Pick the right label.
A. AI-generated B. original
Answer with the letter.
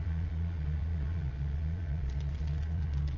A